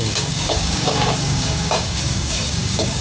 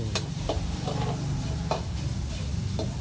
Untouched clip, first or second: second